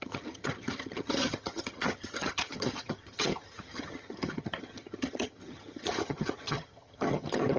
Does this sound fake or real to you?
fake